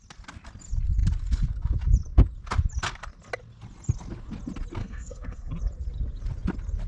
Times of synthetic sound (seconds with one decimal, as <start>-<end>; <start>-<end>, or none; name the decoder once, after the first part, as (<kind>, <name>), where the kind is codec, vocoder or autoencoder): 4.8-5.5 (codec, SNAC)